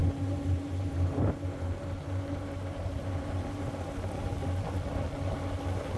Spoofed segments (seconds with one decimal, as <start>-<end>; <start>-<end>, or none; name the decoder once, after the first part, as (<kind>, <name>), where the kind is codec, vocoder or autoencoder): 0.0-3.6 (vocoder, BigVGAN v2)